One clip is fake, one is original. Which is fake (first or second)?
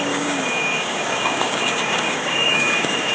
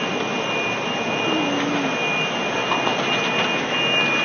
first